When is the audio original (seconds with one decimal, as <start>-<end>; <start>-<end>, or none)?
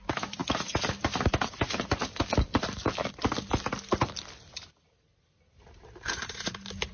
0.4-4.5